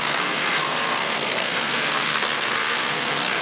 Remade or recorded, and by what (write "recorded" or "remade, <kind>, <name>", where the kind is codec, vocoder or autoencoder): remade, codec, SNAC